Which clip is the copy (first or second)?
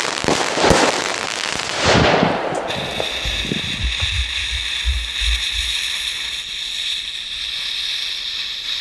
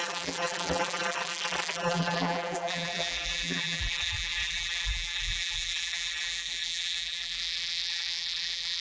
second